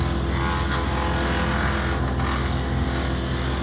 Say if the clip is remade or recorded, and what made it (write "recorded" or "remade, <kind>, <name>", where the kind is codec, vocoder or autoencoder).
recorded